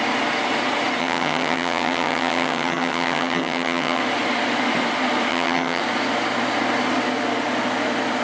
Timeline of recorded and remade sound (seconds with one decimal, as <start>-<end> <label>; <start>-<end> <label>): 0.0-1.0 recorded; 1.0-4.0 remade; 4.0-5.3 recorded; 5.3-5.8 remade; 5.8-8.2 recorded